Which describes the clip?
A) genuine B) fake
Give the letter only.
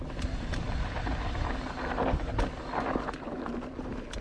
A